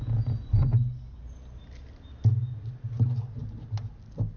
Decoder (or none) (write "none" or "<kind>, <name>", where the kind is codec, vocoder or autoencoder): none